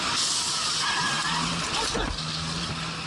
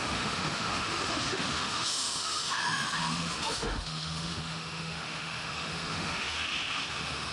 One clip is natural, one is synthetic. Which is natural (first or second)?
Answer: first